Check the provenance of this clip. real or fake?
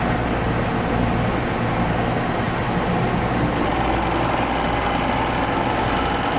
real